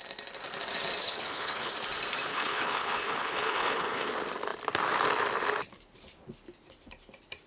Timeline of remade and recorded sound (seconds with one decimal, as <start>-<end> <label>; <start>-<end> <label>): 0.0-1.0 recorded; 1.0-1.7 remade; 1.7-2.3 recorded; 2.3-4.1 remade; 4.1-7.5 recorded